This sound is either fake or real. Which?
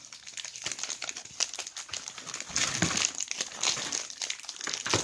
real